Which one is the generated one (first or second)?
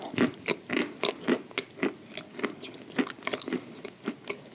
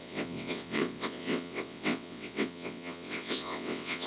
second